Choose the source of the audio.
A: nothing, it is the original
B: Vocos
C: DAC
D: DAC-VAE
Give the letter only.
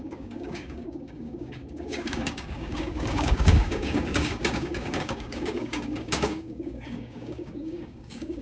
C